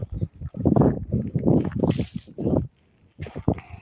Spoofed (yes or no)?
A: no